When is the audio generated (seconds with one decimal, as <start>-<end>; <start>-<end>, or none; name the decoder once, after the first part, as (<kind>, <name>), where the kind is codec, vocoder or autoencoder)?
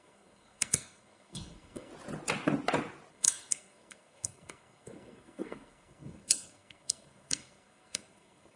0.0-1.9 (codec, SNAC); 3.1-8.6